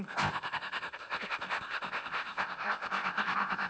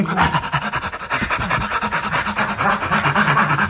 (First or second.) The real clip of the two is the second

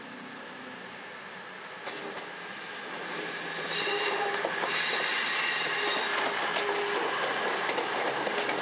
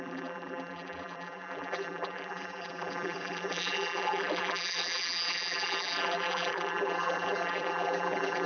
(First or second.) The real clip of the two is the first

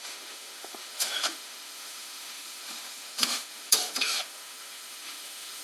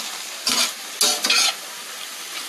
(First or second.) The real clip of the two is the second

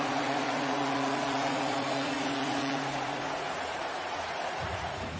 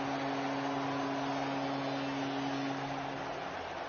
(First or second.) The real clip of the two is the second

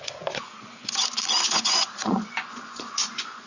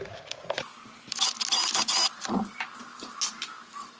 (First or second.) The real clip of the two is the second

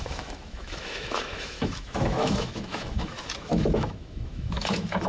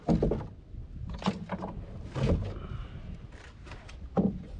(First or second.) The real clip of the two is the second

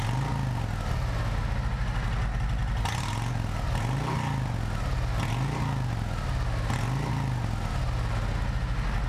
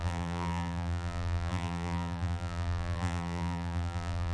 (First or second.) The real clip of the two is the first